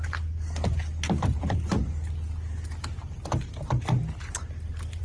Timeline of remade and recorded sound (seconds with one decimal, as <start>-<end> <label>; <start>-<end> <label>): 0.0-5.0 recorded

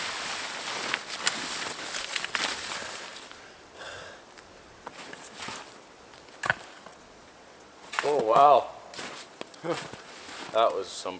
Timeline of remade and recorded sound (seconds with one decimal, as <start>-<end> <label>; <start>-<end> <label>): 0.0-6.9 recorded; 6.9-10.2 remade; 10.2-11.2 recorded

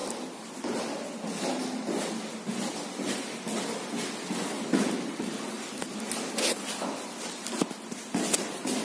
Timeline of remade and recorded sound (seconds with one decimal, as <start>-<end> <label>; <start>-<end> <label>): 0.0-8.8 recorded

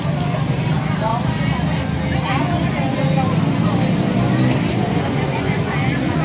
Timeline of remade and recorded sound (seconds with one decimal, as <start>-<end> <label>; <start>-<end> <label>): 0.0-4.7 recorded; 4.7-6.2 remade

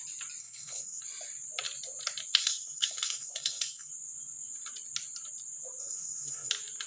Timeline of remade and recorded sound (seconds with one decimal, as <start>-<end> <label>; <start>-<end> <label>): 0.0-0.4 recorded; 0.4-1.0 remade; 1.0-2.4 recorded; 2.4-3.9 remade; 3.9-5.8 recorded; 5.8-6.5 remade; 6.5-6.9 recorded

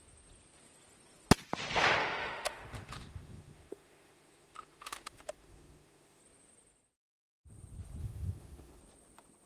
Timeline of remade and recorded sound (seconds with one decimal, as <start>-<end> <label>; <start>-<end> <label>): 0.0-2.0 recorded; 2.0-6.2 remade; 6.2-8.0 recorded; 8.0-8.8 remade; 8.8-9.5 recorded

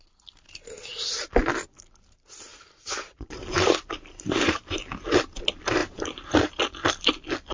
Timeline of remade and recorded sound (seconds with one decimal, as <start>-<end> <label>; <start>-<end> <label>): 0.0-2.5 recorded; 2.5-4.8 remade; 4.8-5.8 recorded; 5.8-6.6 remade; 6.6-7.5 recorded